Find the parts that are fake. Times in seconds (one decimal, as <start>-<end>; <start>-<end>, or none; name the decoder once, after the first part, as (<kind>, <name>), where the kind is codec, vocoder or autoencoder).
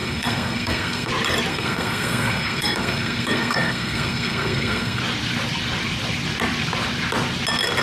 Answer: 0.0-1.1 (codec, SNAC); 1.5-5.0